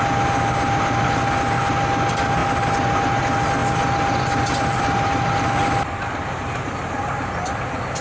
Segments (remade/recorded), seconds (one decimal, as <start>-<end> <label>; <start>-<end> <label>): 0.0-8.0 recorded